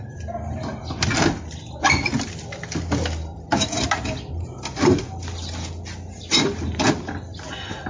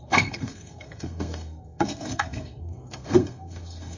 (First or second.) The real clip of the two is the first